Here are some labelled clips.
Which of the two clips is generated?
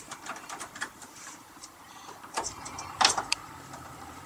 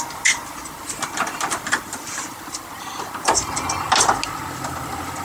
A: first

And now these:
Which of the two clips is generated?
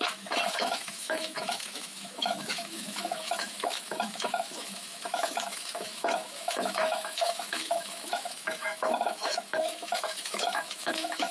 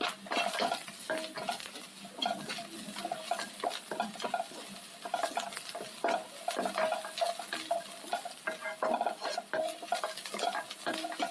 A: first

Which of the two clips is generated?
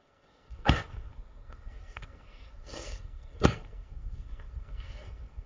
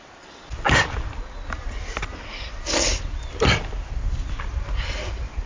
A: first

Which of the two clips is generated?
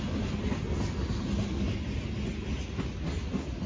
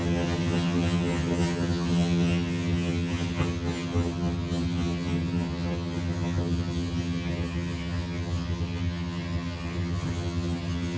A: second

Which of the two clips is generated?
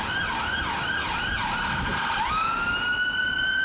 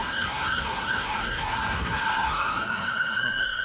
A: second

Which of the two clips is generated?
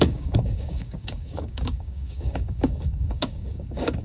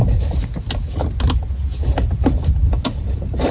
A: first